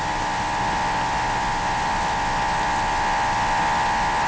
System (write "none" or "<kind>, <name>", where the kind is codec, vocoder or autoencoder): none